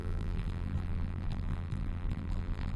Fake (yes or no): yes